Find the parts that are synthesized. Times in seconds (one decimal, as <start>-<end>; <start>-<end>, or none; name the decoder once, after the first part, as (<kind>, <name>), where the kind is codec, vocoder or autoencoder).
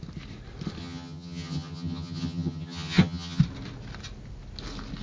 0.8-3.4 (vocoder, HiFi-GAN)